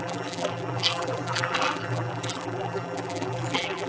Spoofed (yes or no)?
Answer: yes